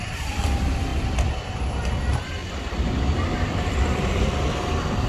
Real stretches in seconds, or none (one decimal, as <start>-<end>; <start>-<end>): 0.9-1.6; 2.4-3.6